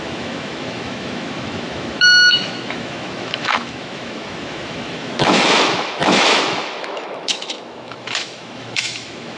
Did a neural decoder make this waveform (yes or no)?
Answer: yes